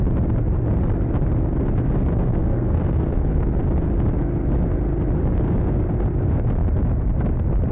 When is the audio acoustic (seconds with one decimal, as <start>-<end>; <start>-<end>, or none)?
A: 0.0-2.1; 3.5-7.7